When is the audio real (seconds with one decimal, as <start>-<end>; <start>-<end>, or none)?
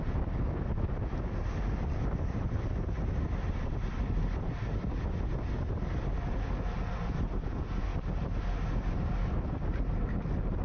0.0-10.6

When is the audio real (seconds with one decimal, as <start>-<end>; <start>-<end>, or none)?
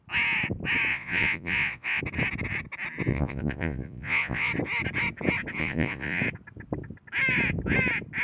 0.0-0.9; 2.0-3.1; 4.5-5.6; 6.2-8.2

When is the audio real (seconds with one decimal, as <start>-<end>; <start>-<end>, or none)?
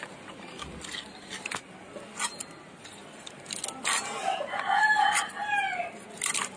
0.0-6.6